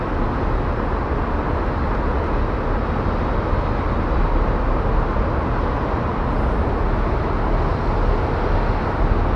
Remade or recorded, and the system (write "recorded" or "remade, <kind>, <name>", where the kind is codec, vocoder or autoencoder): recorded